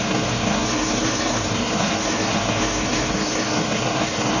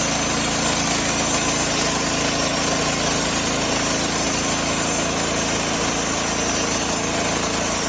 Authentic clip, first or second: second